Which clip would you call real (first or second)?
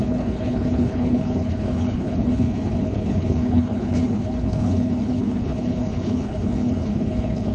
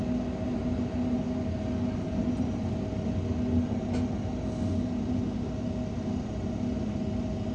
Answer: second